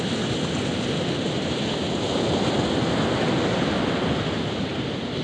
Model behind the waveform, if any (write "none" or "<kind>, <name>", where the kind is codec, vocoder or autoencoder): none